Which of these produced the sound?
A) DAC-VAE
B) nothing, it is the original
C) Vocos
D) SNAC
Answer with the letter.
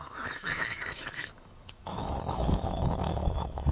A